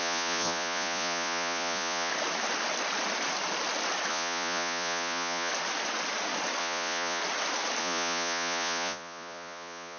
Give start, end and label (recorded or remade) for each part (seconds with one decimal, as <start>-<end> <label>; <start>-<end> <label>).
0.0-2.1 remade; 2.1-4.1 recorded; 4.1-5.5 remade; 5.5-6.6 recorded; 6.6-7.2 remade; 7.2-7.8 recorded; 7.8-10.0 remade